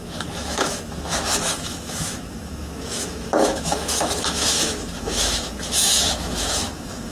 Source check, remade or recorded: remade